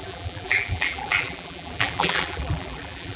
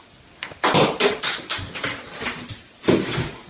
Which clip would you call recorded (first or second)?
second